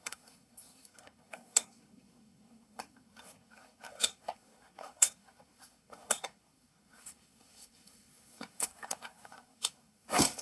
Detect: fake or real fake